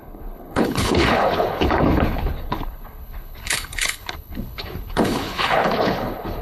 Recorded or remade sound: remade